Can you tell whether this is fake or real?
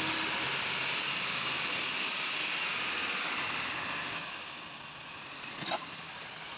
real